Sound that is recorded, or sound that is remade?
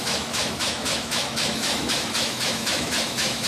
remade